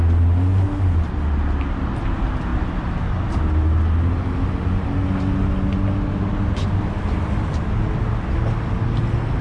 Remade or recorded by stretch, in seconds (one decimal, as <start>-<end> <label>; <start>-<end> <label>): 0.0-9.4 recorded